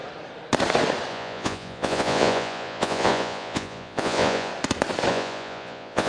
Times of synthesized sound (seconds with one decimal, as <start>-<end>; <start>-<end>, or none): 1.1-4.5; 5.1-6.1